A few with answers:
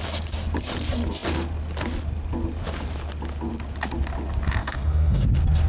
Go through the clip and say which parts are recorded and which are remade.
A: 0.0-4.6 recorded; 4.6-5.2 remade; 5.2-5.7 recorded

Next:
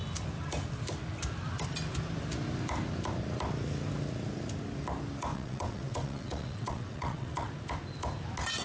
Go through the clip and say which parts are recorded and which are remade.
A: 0.0-5.3 recorded; 5.3-7.5 remade; 7.5-8.6 recorded

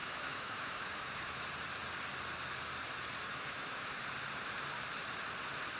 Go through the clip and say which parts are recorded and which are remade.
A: 0.0-1.4 remade; 1.4-3.3 recorded; 3.3-4.0 remade; 4.0-5.8 recorded

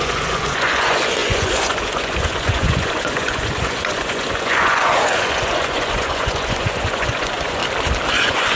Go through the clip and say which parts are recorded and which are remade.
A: 0.0-7.6 remade; 7.6-8.2 recorded; 8.2-8.6 remade